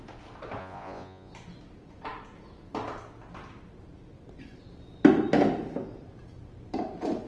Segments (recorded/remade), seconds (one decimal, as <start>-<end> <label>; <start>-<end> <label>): 0.0-0.6 recorded; 0.6-1.3 remade; 1.3-7.3 recorded